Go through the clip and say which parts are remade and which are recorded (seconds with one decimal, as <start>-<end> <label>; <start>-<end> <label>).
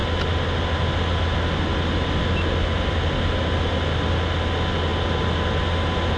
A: 0.0-6.2 recorded